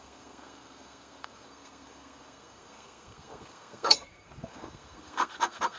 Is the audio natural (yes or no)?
no